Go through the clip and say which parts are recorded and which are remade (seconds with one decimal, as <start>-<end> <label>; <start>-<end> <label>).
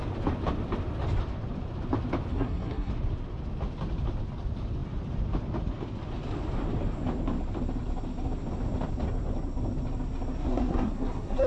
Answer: 0.0-2.3 recorded; 2.3-2.9 remade; 2.9-10.4 recorded; 10.4-11.5 remade